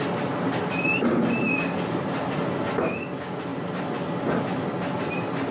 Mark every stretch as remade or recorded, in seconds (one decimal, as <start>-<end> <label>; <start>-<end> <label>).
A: 0.0-3.5 recorded; 3.5-4.7 remade; 4.7-5.5 recorded